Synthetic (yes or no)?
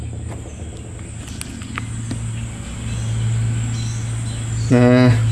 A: no